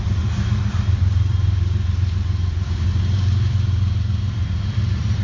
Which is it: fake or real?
fake